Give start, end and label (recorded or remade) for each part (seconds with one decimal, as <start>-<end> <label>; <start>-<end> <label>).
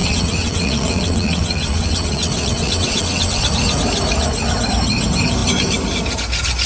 0.0-3.4 remade; 3.4-6.7 recorded